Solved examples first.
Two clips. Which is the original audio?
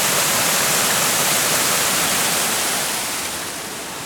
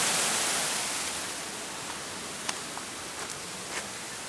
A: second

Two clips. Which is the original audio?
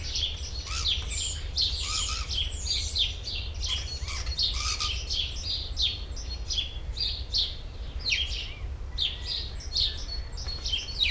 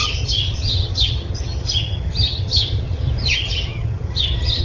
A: first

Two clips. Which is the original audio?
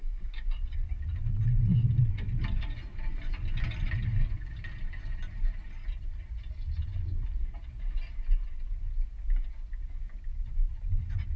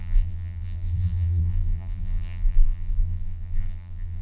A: first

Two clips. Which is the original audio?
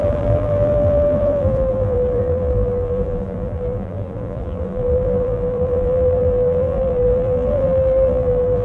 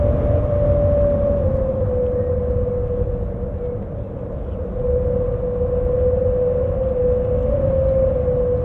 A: second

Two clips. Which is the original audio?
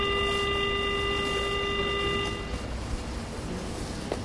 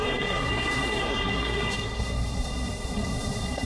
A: first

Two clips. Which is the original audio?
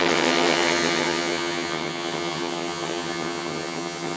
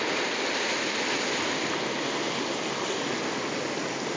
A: second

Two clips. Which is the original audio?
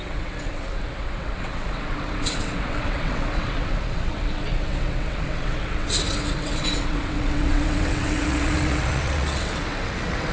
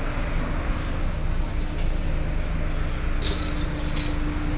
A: second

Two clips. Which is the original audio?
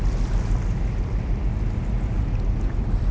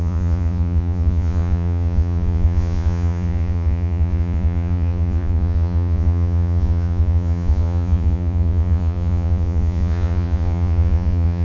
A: first